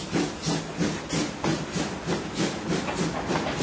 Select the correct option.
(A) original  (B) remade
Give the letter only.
A